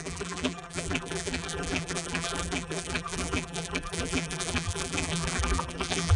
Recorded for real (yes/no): no